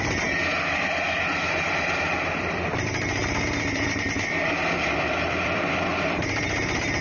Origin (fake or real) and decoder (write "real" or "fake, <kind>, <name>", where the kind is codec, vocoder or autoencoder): fake, vocoder, BigVGAN v2